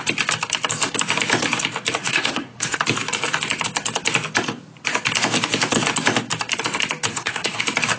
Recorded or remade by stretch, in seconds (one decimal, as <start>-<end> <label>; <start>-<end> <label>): 0.0-2.0 recorded; 2.0-2.8 remade; 2.8-7.1 recorded; 7.1-7.6 remade; 7.6-8.0 recorded